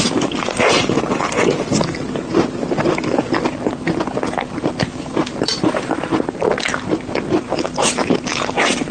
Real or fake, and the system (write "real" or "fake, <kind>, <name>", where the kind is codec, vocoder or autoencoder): fake, vocoder, BigVGAN v2